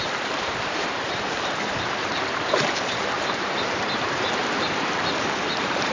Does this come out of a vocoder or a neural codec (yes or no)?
yes